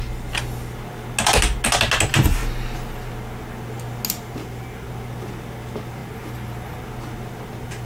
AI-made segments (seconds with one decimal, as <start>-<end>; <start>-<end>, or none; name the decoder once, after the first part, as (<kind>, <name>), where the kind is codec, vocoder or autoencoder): none